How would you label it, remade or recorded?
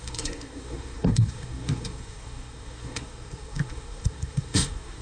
remade